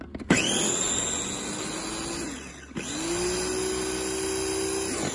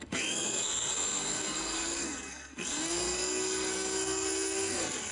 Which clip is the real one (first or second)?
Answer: first